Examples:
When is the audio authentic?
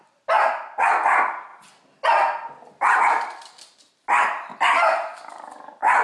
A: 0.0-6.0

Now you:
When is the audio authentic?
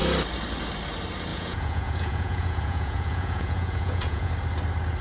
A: 0.0-1.3; 4.3-5.0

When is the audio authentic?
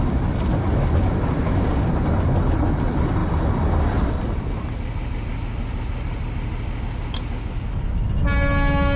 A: 0.0-9.0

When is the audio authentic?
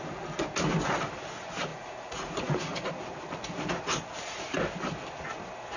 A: 0.0-1.7; 2.9-5.8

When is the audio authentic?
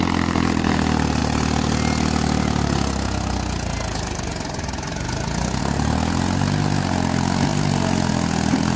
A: 0.0-8.8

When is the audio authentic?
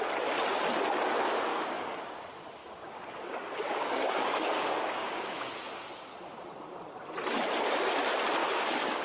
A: 0.0-1.5; 2.0-2.6; 5.5-8.4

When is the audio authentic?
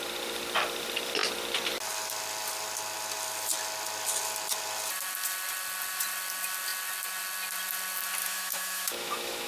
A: 0.0-8.2